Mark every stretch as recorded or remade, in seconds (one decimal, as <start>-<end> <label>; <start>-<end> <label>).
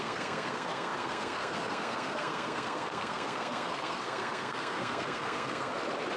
0.0-5.7 remade; 5.7-6.2 recorded